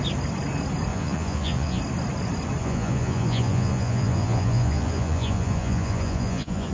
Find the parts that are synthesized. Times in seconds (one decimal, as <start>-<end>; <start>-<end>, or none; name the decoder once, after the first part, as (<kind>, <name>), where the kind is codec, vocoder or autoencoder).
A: 0.9-1.8 (vocoder, Vocos); 2.6-6.7